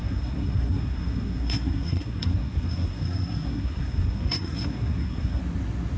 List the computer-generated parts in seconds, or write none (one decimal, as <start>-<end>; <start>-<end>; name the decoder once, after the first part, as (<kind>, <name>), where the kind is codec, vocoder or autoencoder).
0.0-5.4 (codec, SNAC)